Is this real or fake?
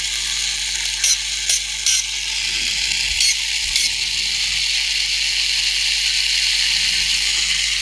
real